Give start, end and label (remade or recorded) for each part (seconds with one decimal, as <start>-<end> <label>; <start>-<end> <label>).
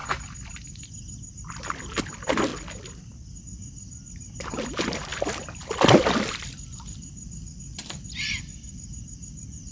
0.0-1.4 recorded; 1.4-2.5 remade; 2.5-3.4 recorded; 3.4-9.7 remade